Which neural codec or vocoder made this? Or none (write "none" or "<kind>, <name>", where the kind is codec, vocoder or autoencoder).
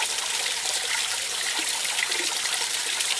vocoder, BigVGAN v2